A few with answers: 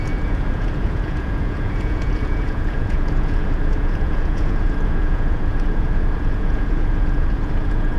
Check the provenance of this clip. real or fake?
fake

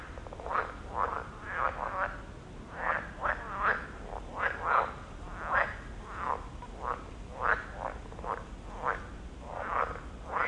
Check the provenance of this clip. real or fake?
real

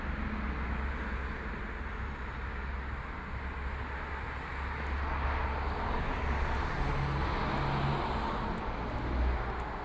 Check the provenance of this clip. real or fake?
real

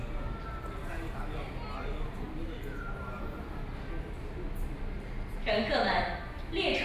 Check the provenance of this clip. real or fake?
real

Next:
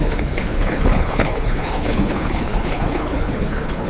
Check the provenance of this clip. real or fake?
fake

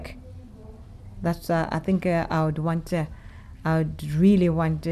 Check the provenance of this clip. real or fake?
real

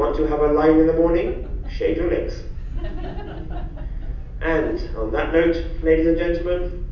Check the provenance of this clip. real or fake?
real